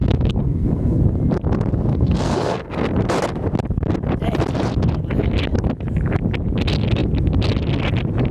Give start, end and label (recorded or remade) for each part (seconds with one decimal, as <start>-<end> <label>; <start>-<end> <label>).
0.0-1.0 remade; 1.0-1.9 recorded; 1.9-2.9 remade; 2.9-8.3 recorded